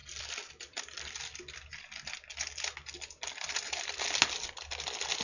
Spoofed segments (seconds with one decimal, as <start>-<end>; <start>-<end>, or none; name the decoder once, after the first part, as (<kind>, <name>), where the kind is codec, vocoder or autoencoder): 0.0-1.7 (vocoder, BigVGAN v2)